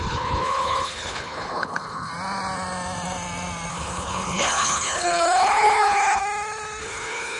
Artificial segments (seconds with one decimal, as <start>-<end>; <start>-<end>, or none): 0.0-2.1; 3.7-6.2; 6.8-7.4